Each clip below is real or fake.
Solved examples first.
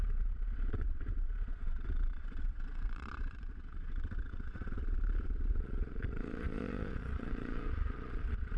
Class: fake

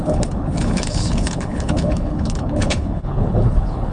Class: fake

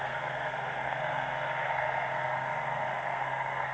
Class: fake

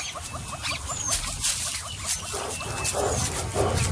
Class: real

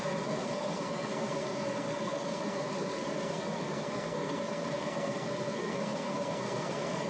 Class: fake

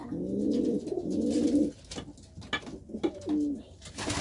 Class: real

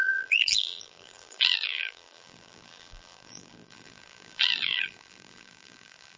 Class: fake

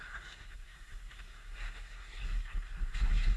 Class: fake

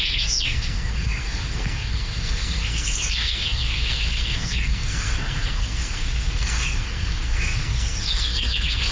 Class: fake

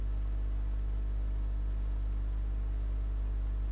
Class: real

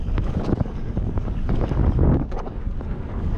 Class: fake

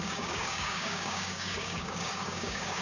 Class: fake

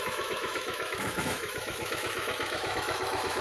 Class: fake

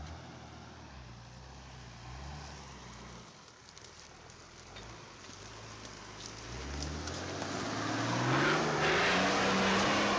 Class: real